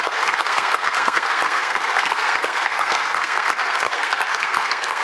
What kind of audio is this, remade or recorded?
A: remade